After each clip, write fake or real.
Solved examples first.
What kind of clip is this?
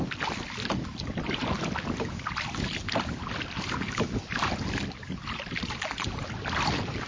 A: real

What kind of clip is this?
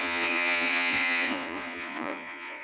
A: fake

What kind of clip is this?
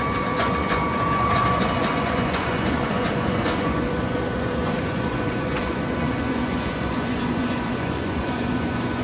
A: fake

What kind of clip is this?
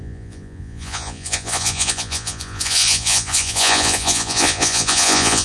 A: fake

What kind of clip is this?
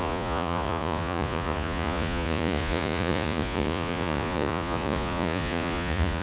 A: fake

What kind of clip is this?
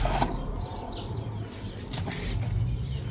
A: real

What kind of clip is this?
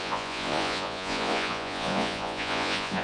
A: fake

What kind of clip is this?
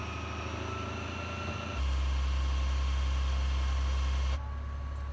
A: real